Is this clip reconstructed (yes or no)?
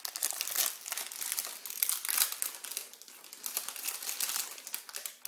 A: no